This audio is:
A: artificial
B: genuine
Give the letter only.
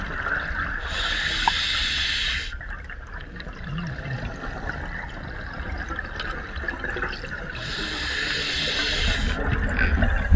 B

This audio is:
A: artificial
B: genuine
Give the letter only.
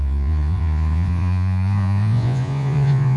A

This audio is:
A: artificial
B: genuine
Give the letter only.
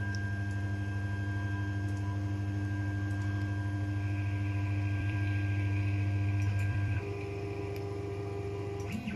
A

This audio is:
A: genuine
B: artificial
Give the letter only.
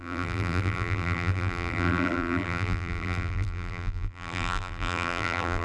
B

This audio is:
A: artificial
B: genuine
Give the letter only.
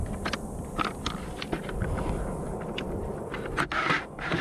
B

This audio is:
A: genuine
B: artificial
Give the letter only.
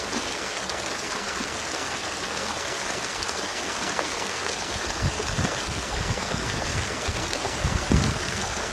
B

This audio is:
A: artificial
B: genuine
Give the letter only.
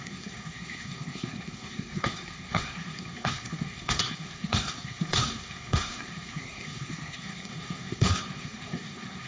A